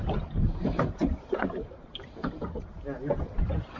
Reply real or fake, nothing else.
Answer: fake